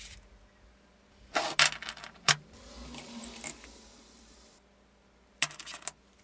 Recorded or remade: recorded